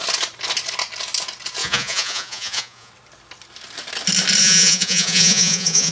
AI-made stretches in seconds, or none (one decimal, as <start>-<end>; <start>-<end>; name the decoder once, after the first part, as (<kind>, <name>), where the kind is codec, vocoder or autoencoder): 1.6-2.9 (vocoder, Vocos); 4.4-5.9